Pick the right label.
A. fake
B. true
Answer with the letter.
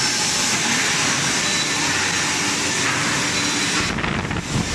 B